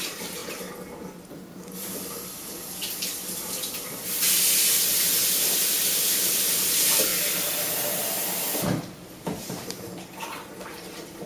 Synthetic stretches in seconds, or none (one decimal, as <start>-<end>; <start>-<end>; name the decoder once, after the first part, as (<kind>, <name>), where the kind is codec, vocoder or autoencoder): 0.0-0.4 (vocoder, BigVGAN v2); 1.8-7.1; 8.4-11.3